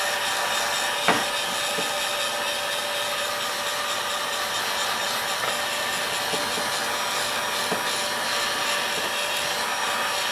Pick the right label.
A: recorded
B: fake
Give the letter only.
A